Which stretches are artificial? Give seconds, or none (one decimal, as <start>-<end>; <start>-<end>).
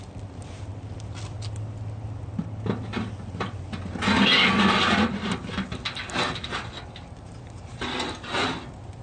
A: none